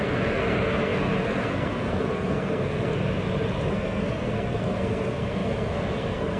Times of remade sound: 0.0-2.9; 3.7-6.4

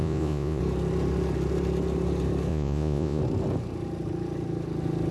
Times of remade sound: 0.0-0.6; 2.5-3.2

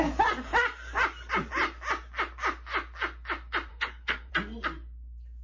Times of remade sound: 3.7-4.3